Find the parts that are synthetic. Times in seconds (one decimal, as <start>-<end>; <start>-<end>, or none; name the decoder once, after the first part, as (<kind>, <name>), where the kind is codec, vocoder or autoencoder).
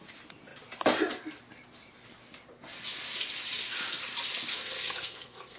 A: 4.6-5.6 (codec, SNAC)